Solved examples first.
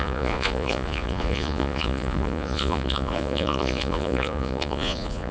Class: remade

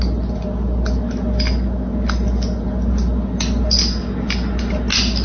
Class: recorded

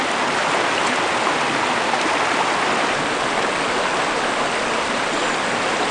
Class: recorded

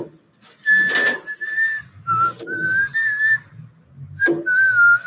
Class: recorded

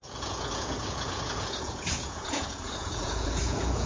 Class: remade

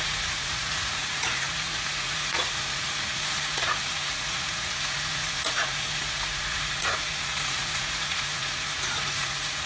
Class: remade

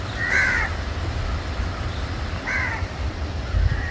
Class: recorded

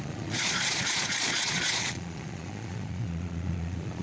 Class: remade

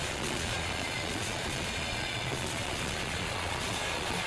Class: remade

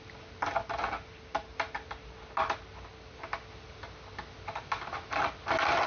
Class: recorded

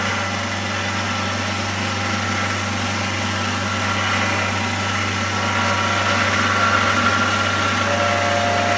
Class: recorded